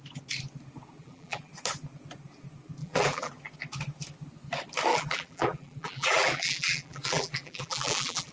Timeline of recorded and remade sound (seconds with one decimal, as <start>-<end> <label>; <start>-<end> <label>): 0.0-1.0 recorded; 1.0-1.5 remade; 1.5-2.8 recorded; 2.8-3.3 remade; 3.3-4.9 recorded; 4.9-8.3 remade